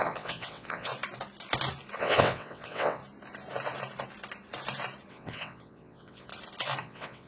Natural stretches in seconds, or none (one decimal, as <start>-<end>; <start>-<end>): 0.9-2.0; 3.0-5.1; 6.3-6.8